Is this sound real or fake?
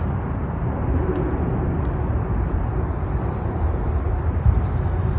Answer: real